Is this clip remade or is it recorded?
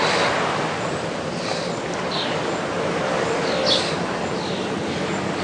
recorded